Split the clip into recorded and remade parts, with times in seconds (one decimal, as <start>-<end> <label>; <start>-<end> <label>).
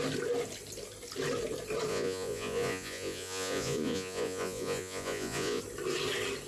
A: 0.0-1.9 recorded; 1.9-5.6 remade; 5.6-6.5 recorded